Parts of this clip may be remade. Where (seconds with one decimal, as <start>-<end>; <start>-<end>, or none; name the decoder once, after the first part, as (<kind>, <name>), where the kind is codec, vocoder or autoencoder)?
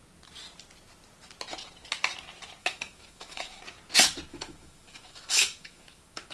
2.6-3.6 (autoencoder, DAC-VAE); 4.3-6.3